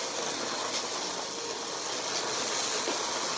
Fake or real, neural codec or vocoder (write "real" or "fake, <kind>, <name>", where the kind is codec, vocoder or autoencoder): real